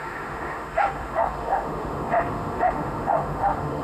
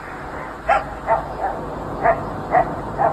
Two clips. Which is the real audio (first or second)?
second